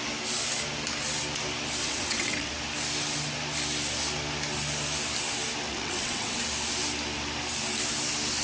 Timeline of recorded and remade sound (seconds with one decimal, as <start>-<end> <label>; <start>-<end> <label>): 0.0-1.8 recorded; 1.8-2.5 remade; 2.5-5.7 recorded; 5.7-6.4 remade; 6.4-8.4 recorded